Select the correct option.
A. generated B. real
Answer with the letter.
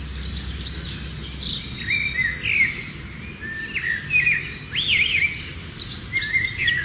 B